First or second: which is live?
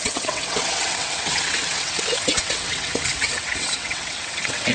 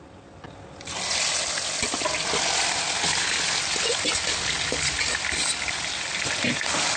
second